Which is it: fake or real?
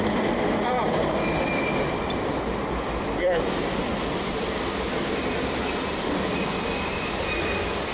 fake